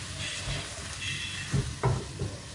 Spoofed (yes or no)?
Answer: no